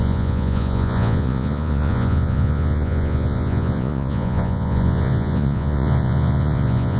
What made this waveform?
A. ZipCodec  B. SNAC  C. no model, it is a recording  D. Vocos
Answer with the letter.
D